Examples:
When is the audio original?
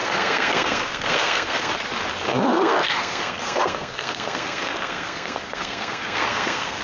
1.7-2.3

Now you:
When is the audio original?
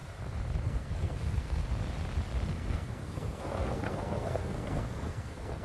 0.0-0.6; 1.7-2.5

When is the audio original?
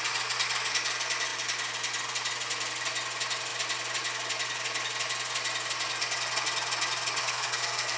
0.0-7.2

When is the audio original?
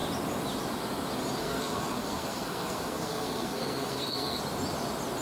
0.0-1.4; 4.4-5.2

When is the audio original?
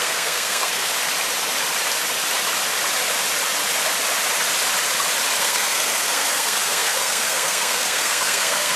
0.9-5.4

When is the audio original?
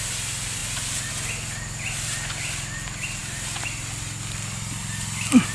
0.0-5.5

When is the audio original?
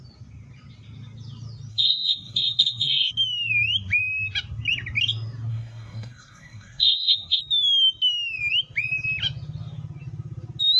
0.0-1.7; 3.1-5.5; 7.4-10.8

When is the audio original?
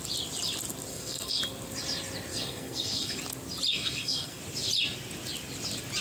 0.0-0.9; 1.4-2.3; 3.2-3.7; 4.4-6.0